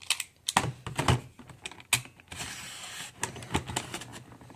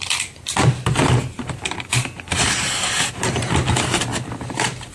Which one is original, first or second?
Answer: first